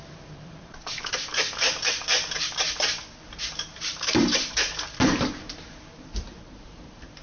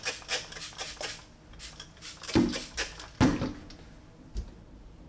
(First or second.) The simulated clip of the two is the first